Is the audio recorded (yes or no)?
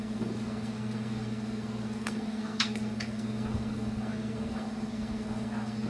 no